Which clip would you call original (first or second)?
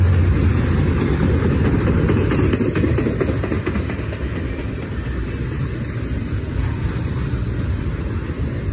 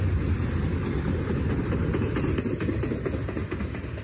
first